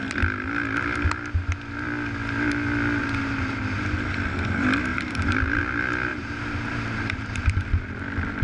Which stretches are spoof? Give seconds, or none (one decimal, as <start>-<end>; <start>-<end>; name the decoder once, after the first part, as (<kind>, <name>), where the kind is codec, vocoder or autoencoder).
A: 3.0-3.6 (vocoder, BigVGAN v2); 4.9-5.6; 6.1-7.8